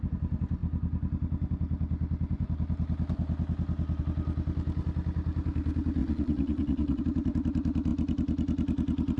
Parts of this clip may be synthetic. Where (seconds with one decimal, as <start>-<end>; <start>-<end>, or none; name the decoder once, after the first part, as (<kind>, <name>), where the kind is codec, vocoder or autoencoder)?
6.0-7.0 (vocoder, Vocos)